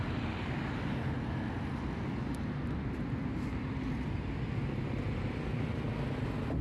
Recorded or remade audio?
recorded